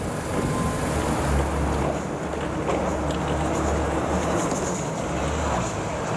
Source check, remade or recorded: recorded